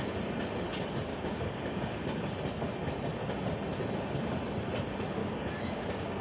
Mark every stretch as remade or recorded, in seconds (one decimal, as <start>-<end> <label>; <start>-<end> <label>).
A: 0.0-1.1 recorded; 1.1-2.3 remade; 2.3-5.2 recorded; 5.2-6.2 remade